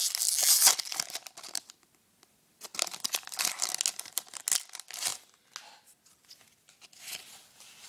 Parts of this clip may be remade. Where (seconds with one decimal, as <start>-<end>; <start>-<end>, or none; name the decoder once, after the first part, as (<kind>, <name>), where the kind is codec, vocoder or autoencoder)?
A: none